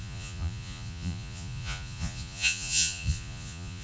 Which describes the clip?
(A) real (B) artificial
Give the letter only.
B